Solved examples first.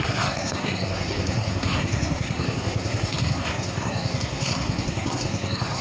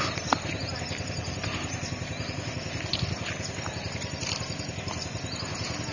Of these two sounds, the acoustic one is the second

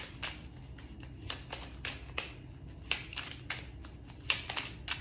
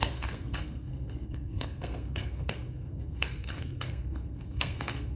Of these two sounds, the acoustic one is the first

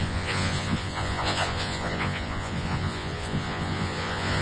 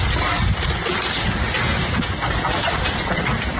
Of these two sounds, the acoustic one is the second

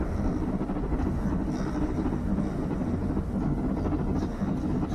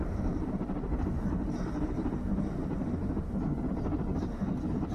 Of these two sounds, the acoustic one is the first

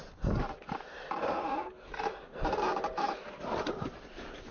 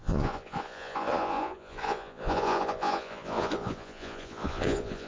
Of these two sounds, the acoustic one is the first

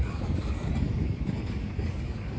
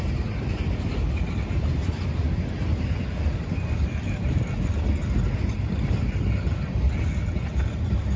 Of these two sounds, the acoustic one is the second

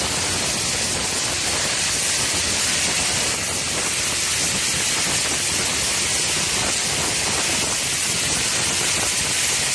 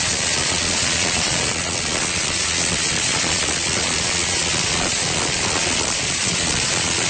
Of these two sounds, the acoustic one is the first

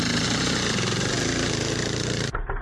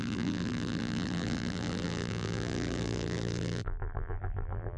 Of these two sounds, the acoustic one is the first